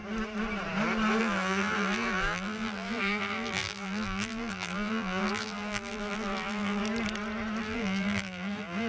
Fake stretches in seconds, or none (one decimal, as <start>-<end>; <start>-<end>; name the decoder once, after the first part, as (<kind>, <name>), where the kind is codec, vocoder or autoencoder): 1.2-6.8 (vocoder, BigVGAN v2); 7.6-8.9